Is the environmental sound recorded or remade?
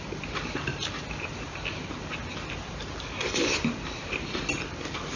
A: recorded